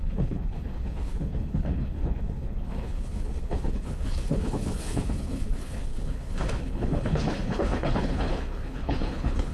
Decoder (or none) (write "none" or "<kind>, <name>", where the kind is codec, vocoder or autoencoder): codec, HILCodec